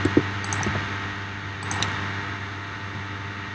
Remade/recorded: recorded